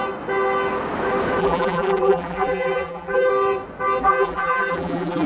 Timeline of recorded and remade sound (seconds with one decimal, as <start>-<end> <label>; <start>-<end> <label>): 0.0-1.4 recorded; 1.4-3.3 remade; 3.3-4.0 recorded; 4.0-5.3 remade

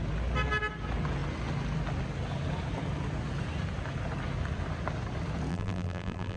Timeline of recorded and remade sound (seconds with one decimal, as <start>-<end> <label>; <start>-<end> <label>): 0.0-5.5 recorded; 5.5-6.4 remade